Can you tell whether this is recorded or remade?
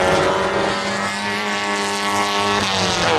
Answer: recorded